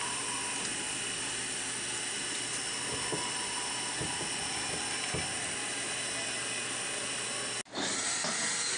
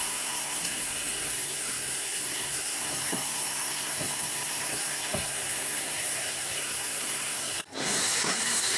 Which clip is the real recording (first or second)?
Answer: first